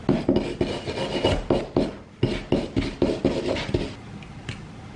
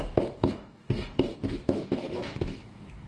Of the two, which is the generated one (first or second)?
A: second